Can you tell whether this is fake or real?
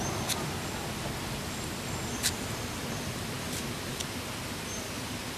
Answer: fake